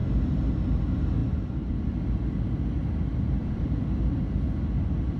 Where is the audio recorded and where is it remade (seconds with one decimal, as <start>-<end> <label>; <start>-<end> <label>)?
0.0-0.5 remade; 0.5-3.4 recorded; 3.4-4.2 remade; 4.2-5.2 recorded